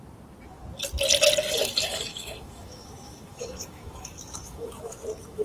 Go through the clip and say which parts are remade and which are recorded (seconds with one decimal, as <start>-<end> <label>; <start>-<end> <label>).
0.0-2.1 recorded; 2.1-5.4 remade